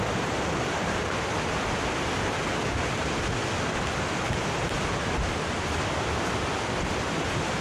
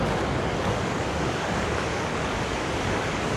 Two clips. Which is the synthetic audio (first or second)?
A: second